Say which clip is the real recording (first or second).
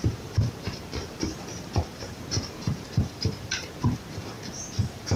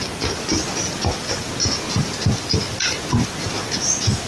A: second